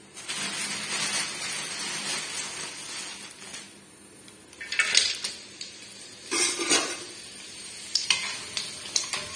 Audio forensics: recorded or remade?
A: recorded